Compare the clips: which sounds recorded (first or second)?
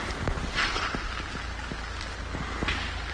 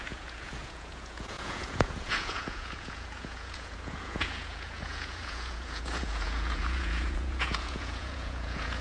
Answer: first